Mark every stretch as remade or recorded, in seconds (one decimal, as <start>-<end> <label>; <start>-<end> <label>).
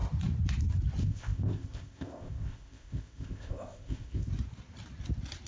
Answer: 0.0-1.0 recorded; 1.0-4.3 remade; 4.3-5.5 recorded